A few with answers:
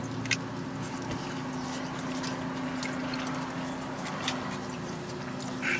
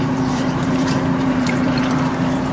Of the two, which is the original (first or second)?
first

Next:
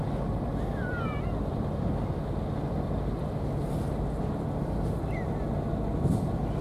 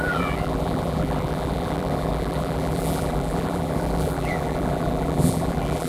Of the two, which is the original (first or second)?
first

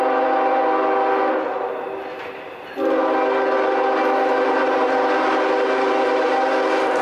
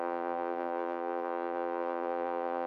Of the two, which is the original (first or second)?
first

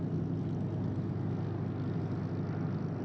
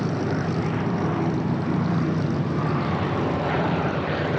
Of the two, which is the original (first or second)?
first